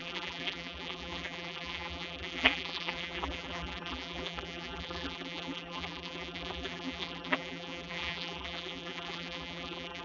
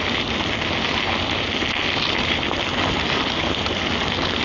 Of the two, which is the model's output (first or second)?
first